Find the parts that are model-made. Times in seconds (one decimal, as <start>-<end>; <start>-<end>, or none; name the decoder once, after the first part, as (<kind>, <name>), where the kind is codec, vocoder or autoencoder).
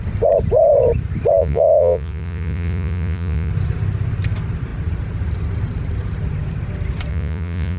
1.4-3.5 (vocoder, Vocos); 7.1-7.8